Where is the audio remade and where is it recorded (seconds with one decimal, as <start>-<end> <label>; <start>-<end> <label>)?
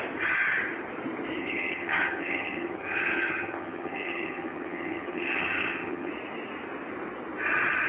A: 0.0-1.4 recorded; 1.4-6.1 remade; 6.1-7.9 recorded